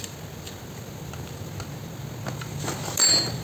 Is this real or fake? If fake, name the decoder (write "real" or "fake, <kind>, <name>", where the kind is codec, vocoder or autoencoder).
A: real